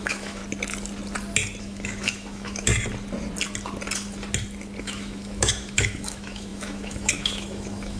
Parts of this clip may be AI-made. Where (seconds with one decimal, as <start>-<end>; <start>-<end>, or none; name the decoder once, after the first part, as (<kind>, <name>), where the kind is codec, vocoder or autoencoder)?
0.0-0.4 (autoencoder, DAC-VAE); 1.6-2.7; 4.8-8.0